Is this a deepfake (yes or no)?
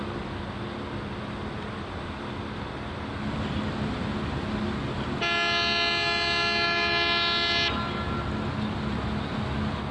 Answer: no